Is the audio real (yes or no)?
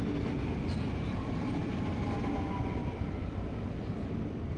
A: yes